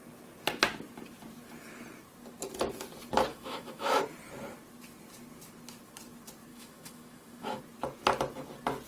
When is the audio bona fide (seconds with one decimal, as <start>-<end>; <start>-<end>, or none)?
0.0-3.3; 4.0-6.5; 7.6-8.9